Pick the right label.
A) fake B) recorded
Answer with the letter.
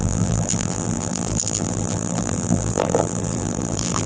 A